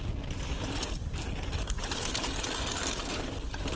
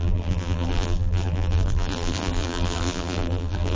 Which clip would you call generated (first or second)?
second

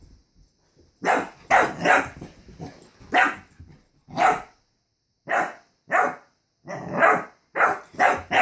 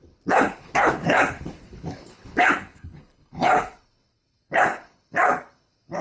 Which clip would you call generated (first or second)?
second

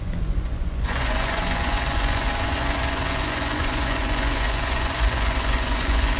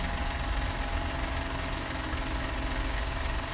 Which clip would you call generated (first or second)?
first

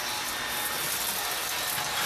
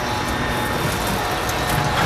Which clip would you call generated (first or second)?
first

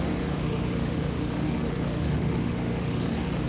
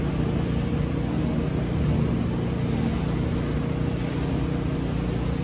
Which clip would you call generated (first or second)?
first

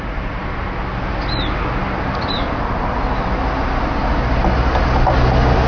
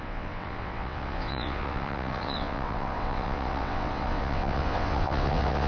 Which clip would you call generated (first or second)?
second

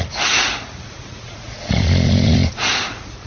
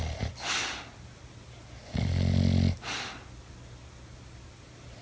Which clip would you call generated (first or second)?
first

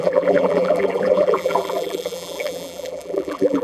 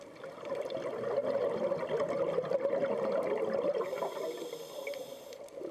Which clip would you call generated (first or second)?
first